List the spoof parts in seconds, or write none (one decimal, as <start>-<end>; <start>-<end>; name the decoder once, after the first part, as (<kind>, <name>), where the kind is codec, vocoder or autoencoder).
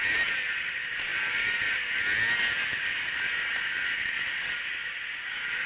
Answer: none